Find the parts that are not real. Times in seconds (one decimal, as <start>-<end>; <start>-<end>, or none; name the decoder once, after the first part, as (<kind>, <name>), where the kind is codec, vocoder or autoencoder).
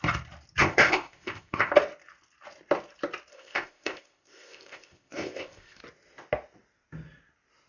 0.6-1.7 (codec, ZipCodec); 3.3-5.8